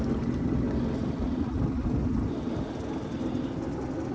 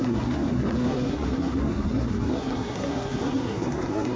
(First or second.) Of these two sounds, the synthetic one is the second